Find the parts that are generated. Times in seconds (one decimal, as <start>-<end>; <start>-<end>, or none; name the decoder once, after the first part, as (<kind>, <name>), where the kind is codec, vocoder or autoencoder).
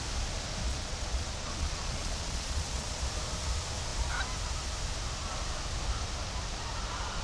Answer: 0.7-3.0 (vocoder, Vocos)